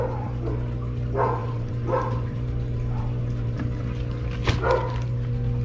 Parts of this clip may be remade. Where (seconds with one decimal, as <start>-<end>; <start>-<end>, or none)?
1.4-3.6